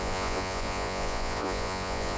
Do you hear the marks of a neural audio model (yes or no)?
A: yes